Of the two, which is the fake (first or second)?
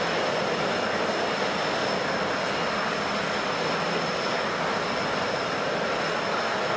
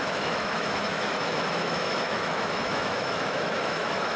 second